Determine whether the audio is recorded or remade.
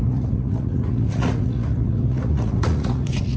remade